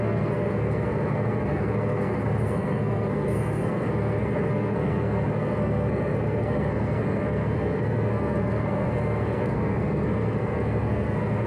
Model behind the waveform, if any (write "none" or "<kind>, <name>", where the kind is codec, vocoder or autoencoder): codec, SNAC